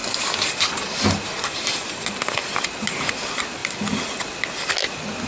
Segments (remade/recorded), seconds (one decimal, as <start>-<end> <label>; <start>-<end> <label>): 0.0-5.3 recorded